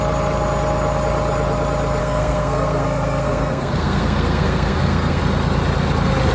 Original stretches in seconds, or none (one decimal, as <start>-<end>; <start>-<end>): 0.0-2.0; 5.2-6.3